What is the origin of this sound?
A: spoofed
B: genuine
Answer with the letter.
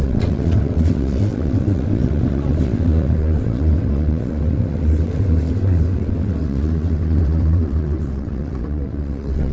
A